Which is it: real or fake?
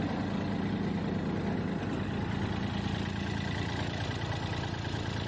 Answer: real